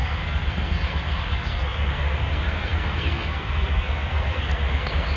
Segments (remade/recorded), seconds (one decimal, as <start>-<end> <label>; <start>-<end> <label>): 0.0-5.2 remade